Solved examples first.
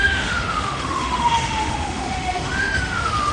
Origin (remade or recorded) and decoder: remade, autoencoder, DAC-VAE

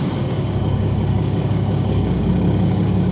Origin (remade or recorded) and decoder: remade, codec, DAC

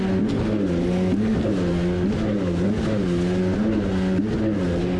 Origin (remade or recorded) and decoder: recorded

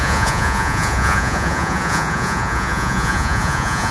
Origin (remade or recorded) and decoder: remade, vocoder, Vocos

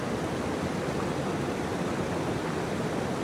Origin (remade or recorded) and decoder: recorded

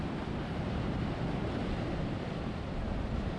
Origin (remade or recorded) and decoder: remade, vocoder, BigVGAN v2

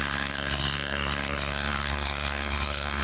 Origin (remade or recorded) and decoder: remade, codec, SNAC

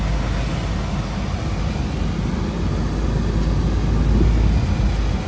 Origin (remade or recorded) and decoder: recorded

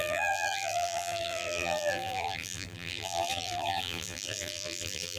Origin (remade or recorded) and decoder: remade, vocoder, BigVGAN v2